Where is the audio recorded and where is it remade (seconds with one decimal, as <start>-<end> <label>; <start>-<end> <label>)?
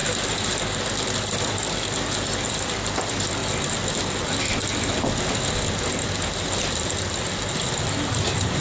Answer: 0.0-3.4 remade; 3.4-7.5 recorded; 7.5-8.6 remade